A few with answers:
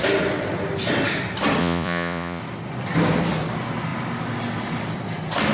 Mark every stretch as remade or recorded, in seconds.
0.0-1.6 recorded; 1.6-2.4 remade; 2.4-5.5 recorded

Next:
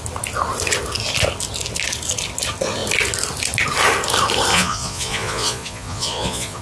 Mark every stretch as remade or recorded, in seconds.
0.0-4.5 recorded; 4.5-6.6 remade

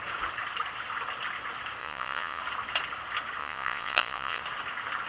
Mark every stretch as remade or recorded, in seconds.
0.0-1.8 recorded; 1.8-2.4 remade; 2.4-3.4 recorded; 3.4-4.4 remade; 4.4-5.1 recorded

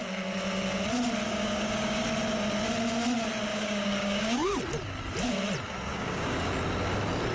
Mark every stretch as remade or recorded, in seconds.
0.0-1.3 recorded; 1.3-2.0 remade; 2.0-3.5 recorded; 3.5-4.6 remade; 4.6-5.9 recorded; 5.9-6.5 remade; 6.5-7.3 recorded

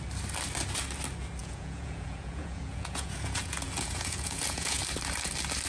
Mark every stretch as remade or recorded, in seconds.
0.0-1.4 recorded; 1.4-4.8 remade; 4.8-5.7 recorded

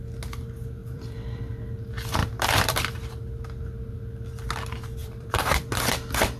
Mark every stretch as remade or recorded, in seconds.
0.0-0.8 recorded; 0.8-1.4 remade; 1.4-2.2 recorded; 2.2-3.1 remade; 3.1-5.0 recorded; 5.0-5.7 remade; 5.7-6.4 recorded

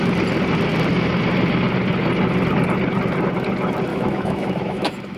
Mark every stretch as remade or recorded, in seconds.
0.0-3.9 recorded; 3.9-5.2 remade